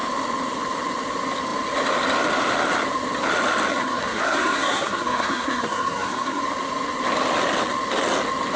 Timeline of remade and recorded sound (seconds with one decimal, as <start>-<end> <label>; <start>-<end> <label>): 0.0-3.7 recorded; 3.7-6.4 remade; 6.4-8.6 recorded